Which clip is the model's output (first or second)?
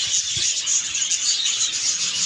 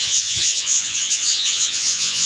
second